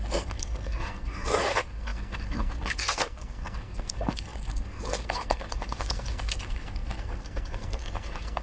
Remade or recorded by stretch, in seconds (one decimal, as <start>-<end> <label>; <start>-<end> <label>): 0.0-8.4 remade